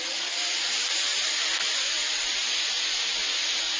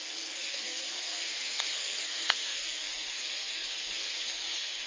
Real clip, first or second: first